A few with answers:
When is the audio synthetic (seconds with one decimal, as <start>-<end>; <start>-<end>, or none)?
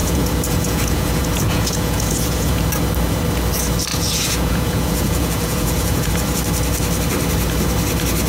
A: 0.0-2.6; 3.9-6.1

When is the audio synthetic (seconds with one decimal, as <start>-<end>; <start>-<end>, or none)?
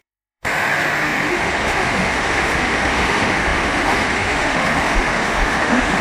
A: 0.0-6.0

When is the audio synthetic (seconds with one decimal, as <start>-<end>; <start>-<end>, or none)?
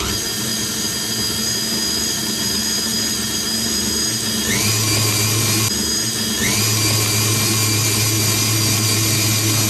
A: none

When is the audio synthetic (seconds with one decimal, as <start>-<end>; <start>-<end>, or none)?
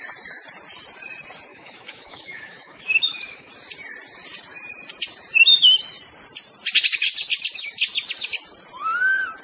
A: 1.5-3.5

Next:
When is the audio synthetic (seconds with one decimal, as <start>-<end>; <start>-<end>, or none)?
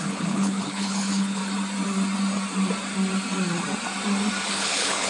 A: 0.0-1.4; 4.5-5.1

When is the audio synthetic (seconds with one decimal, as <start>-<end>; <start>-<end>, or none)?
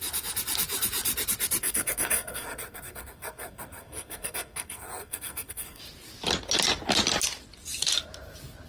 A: 1.6-5.8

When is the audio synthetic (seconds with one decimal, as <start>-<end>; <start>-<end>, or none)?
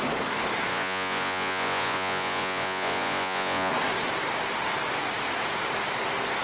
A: 0.7-3.7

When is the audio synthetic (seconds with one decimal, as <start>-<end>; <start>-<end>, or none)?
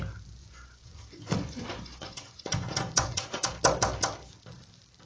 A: 0.4-3.5